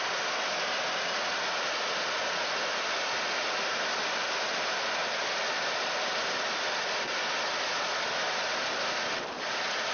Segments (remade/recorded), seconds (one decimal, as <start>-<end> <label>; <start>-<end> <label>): 0.0-9.9 recorded